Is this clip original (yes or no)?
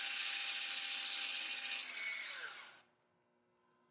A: yes